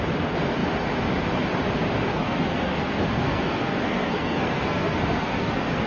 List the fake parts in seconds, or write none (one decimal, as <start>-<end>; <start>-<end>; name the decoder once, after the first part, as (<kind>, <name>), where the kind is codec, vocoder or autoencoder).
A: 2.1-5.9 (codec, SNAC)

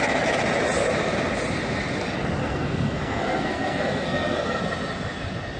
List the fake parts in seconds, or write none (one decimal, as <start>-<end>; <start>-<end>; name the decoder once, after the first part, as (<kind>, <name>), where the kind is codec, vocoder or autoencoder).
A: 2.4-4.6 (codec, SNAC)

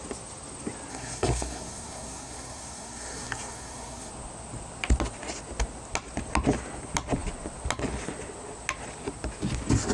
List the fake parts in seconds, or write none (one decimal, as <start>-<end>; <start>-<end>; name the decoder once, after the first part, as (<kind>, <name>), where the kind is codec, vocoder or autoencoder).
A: 0.9-4.1 (codec, SNAC)